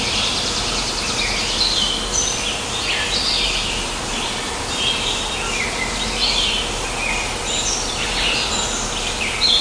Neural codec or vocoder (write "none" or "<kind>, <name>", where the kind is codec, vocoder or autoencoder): none